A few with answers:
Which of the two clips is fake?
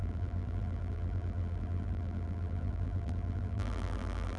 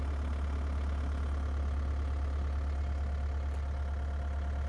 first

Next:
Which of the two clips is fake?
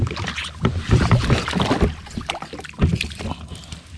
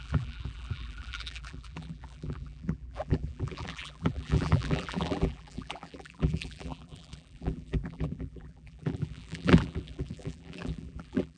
second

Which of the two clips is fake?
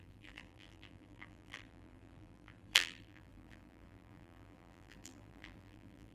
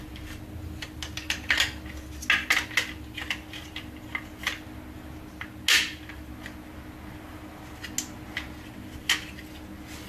first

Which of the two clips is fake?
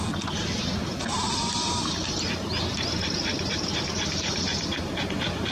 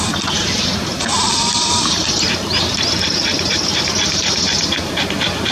second